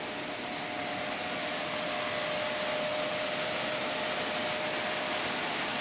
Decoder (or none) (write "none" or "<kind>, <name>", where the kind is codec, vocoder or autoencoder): none